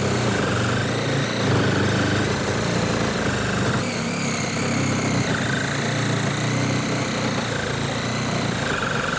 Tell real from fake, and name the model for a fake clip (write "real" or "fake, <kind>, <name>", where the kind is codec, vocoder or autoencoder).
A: real